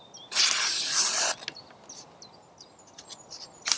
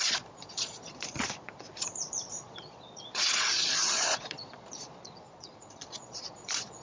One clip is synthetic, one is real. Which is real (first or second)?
first